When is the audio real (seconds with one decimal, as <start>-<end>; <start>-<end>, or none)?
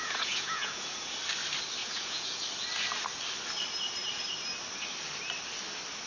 1.1-1.8; 2.4-6.1